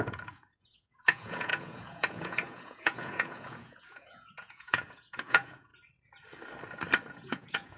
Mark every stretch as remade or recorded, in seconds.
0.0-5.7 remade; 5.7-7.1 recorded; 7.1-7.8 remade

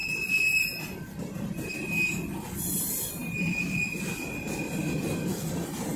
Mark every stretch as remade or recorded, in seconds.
0.0-6.0 recorded

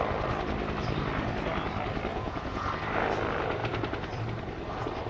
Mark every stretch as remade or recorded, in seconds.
0.0-2.1 recorded; 2.1-2.7 remade; 2.7-5.1 recorded

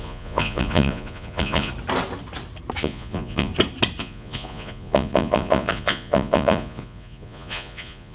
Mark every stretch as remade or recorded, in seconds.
0.0-1.7 remade; 1.7-2.8 recorded; 2.8-3.5 remade; 3.5-4.0 recorded; 4.0-8.1 remade

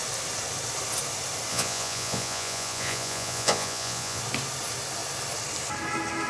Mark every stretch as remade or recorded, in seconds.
0.0-1.5 recorded; 1.5-4.2 remade; 4.2-6.3 recorded